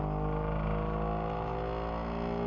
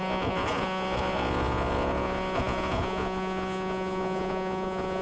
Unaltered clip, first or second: first